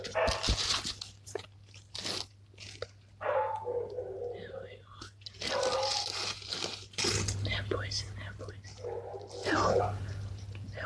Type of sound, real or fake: real